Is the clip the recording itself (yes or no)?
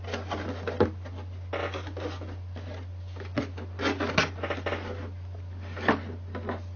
yes